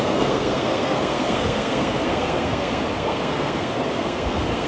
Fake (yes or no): yes